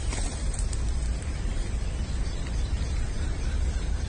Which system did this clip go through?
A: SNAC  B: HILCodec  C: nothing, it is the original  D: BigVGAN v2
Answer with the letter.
C